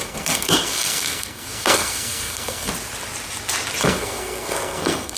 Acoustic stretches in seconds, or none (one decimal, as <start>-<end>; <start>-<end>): 2.7-3.8